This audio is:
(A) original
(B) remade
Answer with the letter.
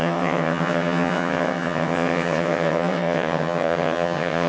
B